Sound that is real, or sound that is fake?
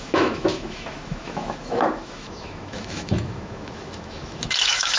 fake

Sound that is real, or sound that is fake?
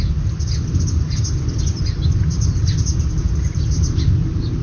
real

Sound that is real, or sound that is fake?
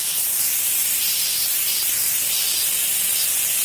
real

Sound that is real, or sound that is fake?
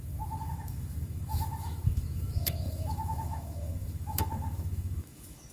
fake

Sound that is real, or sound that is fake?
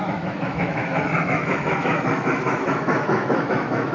fake